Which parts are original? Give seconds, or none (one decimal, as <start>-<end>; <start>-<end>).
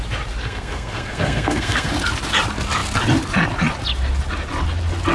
0.0-0.4; 1.9-5.1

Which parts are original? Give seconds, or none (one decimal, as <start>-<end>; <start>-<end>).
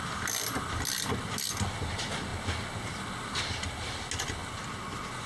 0.0-5.3